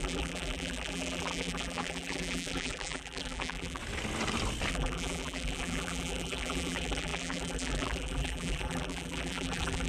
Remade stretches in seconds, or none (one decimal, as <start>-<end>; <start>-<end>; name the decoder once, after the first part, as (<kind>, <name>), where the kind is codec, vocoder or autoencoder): 0.0-3.8 (vocoder, BigVGAN v2); 4.7-9.9